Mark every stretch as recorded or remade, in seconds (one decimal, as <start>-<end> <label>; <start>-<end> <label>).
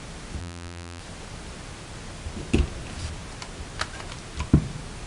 0.0-0.4 recorded; 0.4-1.0 remade; 1.0-5.1 recorded